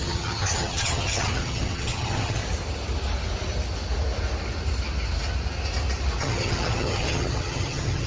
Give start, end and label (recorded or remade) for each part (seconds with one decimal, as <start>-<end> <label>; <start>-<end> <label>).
0.0-2.4 remade; 2.4-6.2 recorded; 6.2-8.1 remade